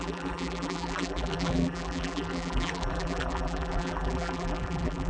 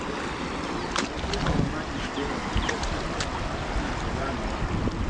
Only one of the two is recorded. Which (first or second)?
second